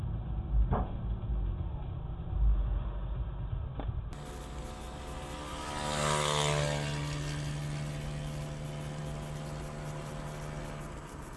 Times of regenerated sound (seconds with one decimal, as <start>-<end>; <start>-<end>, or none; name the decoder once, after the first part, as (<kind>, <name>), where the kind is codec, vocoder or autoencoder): none